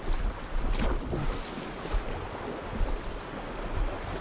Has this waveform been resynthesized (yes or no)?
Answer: no